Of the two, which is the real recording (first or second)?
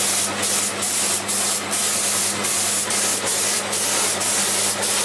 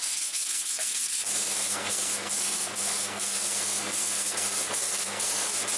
first